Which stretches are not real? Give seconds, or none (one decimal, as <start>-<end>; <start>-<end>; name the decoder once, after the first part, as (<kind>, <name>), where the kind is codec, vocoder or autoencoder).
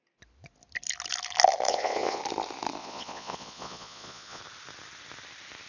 1.7-2.2 (vocoder, Vocos); 2.8-4.4